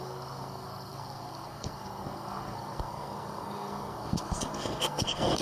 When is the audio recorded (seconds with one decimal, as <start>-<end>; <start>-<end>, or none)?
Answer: none